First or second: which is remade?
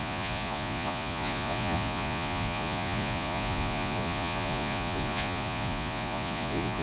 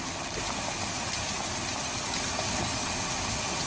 first